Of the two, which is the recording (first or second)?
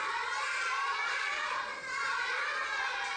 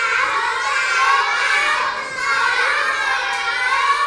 second